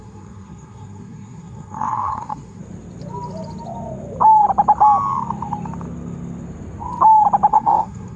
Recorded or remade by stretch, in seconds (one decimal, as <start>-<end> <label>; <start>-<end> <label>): 0.0-2.6 remade; 2.6-7.5 recorded; 7.5-8.2 remade